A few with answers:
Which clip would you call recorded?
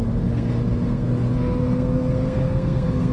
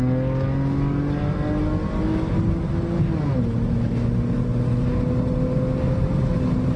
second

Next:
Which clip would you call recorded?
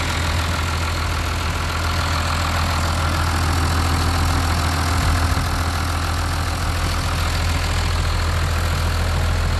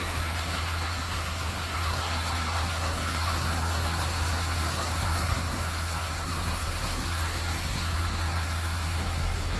first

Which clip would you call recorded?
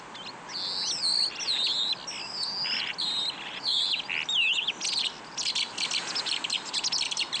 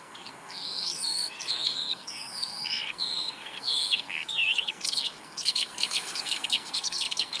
first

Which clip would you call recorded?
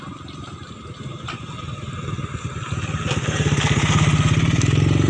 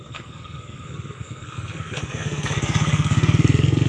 first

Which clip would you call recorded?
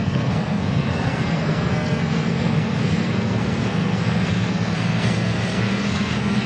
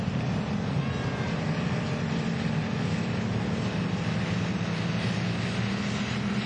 second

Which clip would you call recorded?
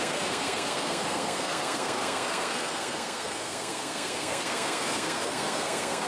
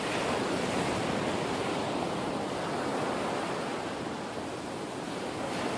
second